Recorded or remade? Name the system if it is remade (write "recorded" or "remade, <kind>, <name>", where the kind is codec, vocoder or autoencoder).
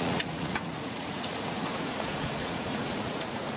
remade, vocoder, Vocos